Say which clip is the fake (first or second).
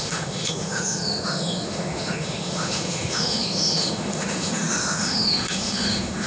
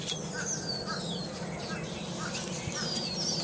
first